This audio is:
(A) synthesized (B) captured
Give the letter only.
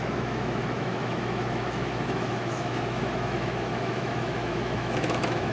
A